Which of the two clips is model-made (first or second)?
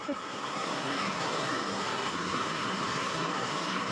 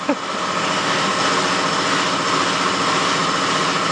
first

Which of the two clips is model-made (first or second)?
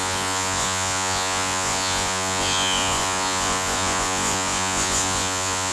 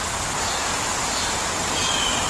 first